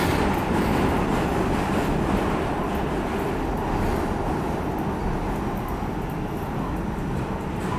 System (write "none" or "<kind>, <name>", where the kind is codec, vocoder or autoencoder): none